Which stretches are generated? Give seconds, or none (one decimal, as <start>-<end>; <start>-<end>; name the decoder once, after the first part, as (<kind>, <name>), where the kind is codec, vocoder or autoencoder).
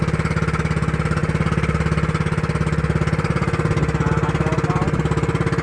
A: none